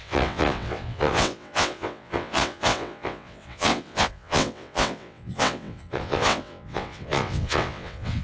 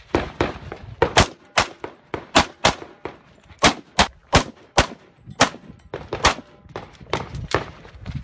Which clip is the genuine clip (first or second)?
second